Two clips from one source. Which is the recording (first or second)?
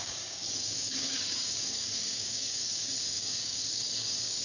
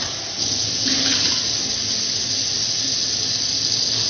second